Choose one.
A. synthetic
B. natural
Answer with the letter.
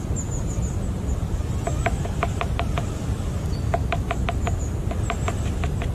B